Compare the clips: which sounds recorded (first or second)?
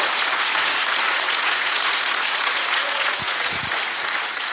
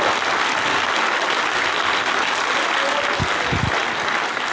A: second